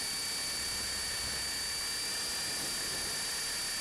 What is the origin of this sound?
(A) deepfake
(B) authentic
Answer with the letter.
B